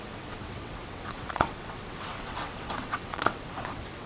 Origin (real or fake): fake